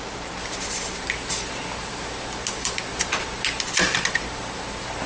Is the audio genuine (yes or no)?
yes